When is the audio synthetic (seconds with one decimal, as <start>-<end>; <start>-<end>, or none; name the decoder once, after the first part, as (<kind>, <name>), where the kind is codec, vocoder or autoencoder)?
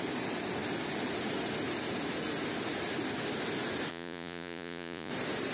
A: 3.9-5.1 (vocoder, Vocos)